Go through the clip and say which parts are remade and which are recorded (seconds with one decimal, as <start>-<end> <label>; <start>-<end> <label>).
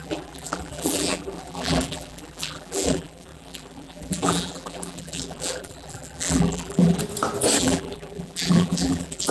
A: 0.0-7.0 remade; 7.0-7.6 recorded; 7.6-9.3 remade